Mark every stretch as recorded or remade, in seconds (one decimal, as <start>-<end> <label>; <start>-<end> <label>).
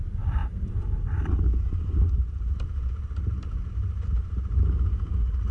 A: 0.0-5.5 recorded